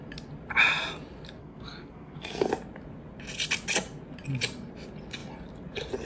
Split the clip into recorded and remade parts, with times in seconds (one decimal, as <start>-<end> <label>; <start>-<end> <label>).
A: 0.0-1.4 recorded; 1.4-2.5 remade; 2.5-6.1 recorded